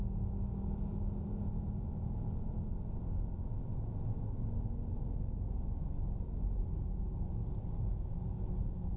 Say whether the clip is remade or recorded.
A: recorded